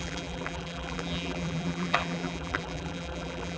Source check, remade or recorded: remade